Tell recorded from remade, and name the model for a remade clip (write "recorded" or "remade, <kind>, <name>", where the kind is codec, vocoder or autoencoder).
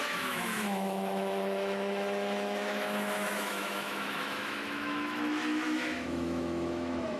remade, autoencoder, DAC-VAE